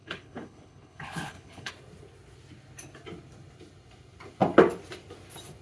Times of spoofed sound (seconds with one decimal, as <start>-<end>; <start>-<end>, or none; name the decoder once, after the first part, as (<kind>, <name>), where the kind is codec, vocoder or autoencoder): 0.0-1.7 (codec, HILCodec)